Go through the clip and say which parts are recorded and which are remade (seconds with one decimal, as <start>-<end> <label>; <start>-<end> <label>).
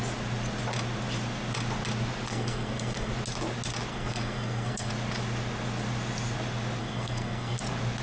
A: 0.0-2.3 recorded; 2.3-3.1 remade; 3.1-3.9 recorded; 3.9-4.9 remade; 4.9-6.8 recorded; 6.8-7.6 remade; 7.6-8.0 recorded